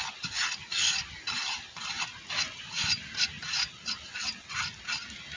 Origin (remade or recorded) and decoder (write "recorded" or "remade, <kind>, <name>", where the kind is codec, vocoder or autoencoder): recorded